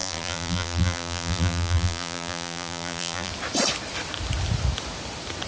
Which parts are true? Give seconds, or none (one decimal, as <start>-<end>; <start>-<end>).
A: 3.3-5.5